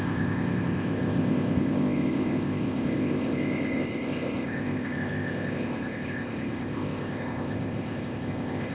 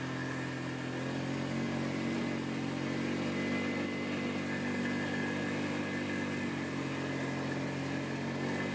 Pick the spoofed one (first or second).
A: first